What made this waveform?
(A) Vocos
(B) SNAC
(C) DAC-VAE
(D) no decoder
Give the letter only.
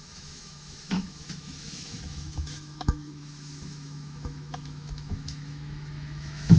C